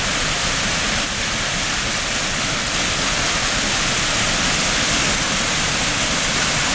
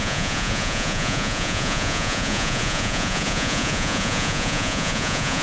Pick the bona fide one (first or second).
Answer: first